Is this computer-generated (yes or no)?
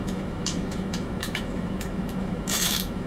yes